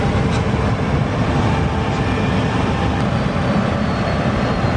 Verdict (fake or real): real